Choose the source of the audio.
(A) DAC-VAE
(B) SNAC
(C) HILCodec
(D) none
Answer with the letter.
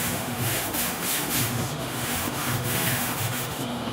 A